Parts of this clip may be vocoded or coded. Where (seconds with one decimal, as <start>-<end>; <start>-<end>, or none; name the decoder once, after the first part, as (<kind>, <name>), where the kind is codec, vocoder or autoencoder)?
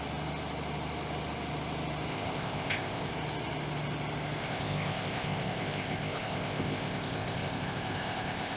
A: 2.1-3.1 (codec, ZipCodec); 4.4-8.6